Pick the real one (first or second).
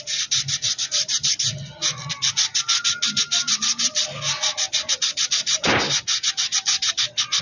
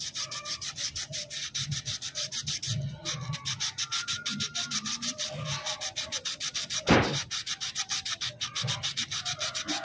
first